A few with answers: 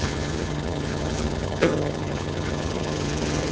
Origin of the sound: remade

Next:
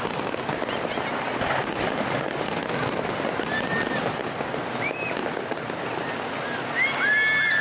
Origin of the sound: recorded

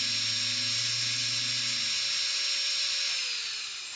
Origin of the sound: recorded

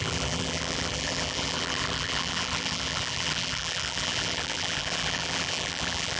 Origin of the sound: remade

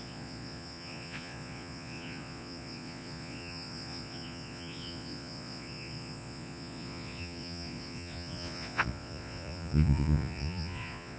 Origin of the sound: remade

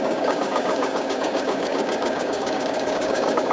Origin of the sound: remade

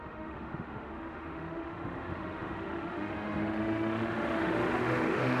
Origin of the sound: remade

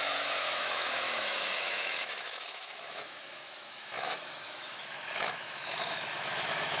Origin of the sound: remade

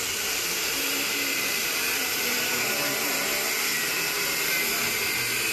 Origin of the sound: remade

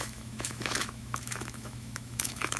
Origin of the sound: remade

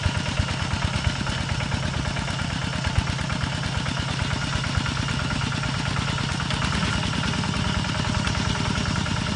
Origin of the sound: recorded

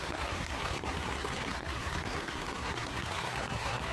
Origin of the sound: remade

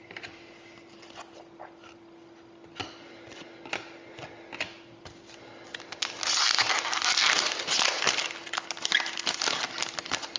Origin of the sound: recorded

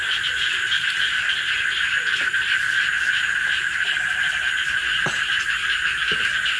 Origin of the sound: remade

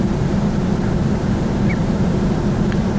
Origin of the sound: remade